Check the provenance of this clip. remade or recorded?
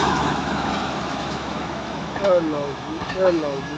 remade